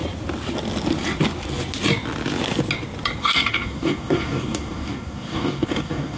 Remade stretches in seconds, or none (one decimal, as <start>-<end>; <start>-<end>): 3.2-6.2